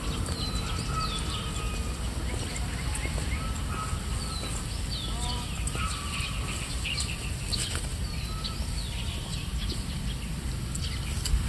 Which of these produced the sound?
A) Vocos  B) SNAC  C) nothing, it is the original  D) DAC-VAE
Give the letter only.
C